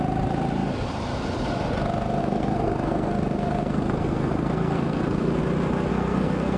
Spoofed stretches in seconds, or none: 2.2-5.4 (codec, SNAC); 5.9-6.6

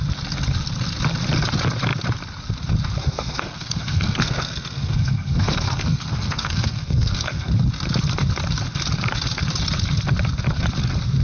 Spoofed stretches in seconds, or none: 3.0-7.5 (codec, SNAC)

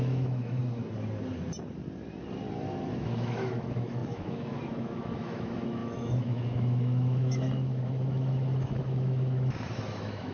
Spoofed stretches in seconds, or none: 0.0-0.6 (autoencoder, DAC-VAE); 2.9-10.3